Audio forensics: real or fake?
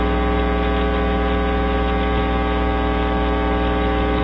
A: real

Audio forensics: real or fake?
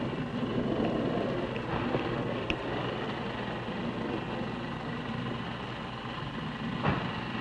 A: real